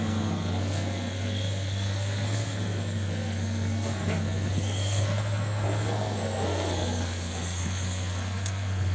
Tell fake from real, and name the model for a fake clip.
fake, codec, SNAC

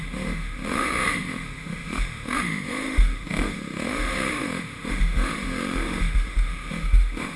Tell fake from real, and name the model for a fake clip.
fake, autoencoder, DAC-VAE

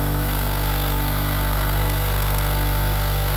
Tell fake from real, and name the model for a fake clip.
fake, codec, SNAC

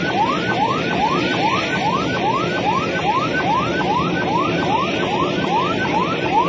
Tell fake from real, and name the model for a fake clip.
real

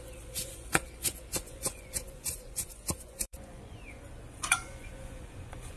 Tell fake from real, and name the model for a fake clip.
fake, vocoder, Vocos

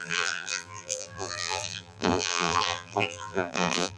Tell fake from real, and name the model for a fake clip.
fake, vocoder, BigVGAN v2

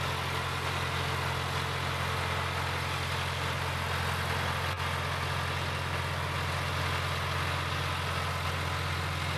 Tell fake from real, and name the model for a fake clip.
real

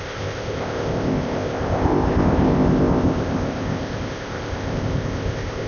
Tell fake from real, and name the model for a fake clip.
fake, codec, ZipCodec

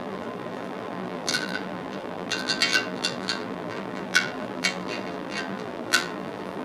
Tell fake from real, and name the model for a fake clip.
fake, vocoder, BigVGAN v2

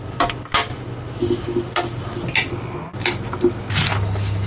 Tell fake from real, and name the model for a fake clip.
real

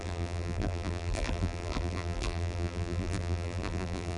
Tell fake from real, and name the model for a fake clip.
fake, vocoder, BigVGAN v2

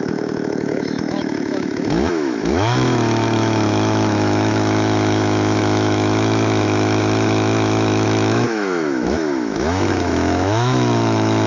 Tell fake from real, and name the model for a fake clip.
fake, autoencoder, DAC-VAE